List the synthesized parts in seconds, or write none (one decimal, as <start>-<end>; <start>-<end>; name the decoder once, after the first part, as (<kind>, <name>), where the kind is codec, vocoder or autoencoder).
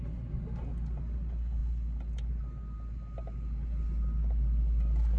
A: none